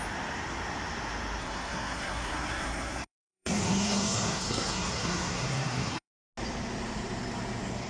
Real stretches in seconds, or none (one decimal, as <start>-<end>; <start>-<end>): 0.0-1.4; 6.1-7.9